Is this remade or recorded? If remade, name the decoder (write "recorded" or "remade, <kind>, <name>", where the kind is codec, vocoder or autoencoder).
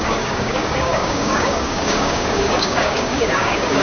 remade, codec, DAC